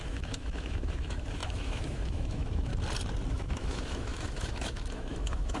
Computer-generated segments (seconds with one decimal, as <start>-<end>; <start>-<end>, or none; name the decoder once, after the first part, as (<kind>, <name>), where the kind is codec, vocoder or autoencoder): 0.0-2.7 (autoencoder, DAC-VAE); 3.3-5.6